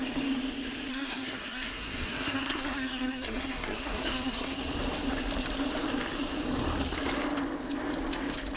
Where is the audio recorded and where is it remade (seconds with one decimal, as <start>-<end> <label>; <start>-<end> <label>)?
0.0-0.9 recorded; 0.9-4.6 remade; 4.6-8.6 recorded